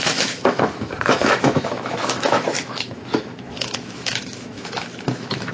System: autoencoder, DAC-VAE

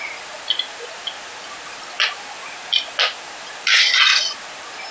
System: none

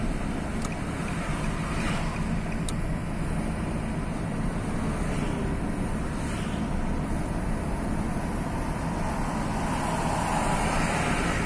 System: none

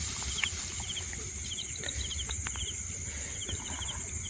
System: none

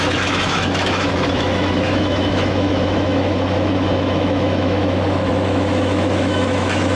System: autoencoder, DAC-VAE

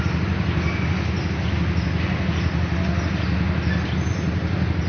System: none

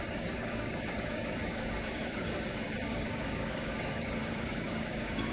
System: codec, DAC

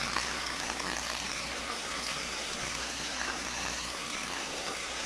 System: codec, SNAC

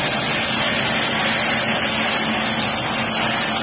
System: none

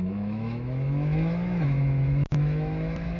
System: autoencoder, DAC-VAE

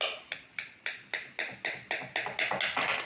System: none